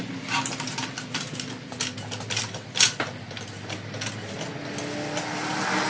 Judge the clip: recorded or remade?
recorded